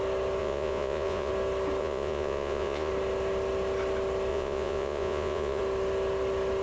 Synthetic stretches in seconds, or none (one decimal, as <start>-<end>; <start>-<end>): 0.4-1.3; 1.8-2.9; 4.3-5.6